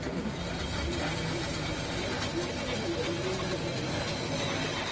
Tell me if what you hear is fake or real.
real